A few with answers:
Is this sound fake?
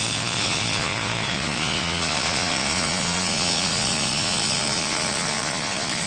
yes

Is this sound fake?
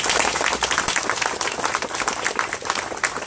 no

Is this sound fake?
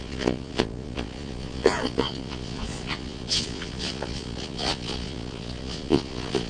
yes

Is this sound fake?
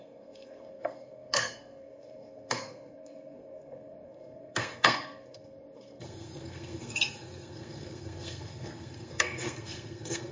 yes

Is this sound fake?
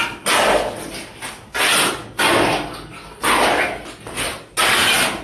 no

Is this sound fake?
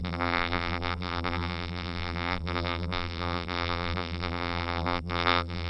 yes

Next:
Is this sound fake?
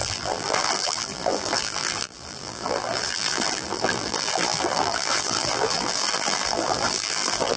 yes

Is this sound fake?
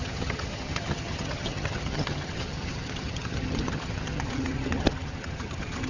yes